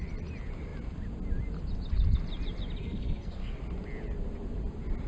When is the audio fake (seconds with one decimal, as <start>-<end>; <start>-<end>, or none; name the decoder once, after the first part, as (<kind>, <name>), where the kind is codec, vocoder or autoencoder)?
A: 2.8-3.6 (codec, SNAC)